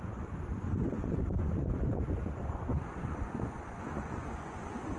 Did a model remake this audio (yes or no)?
yes